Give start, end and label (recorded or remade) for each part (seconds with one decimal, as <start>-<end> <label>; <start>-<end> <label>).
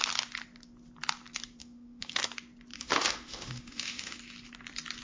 0.0-1.6 recorded; 1.6-2.2 remade; 2.2-2.7 recorded; 2.7-4.2 remade; 4.2-5.0 recorded